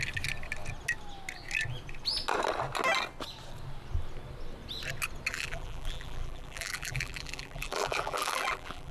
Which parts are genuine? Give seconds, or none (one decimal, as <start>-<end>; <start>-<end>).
0.0-5.3